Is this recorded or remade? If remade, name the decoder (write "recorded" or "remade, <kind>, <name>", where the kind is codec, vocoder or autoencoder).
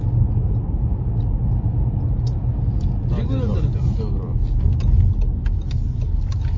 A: recorded